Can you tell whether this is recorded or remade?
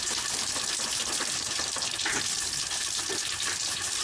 recorded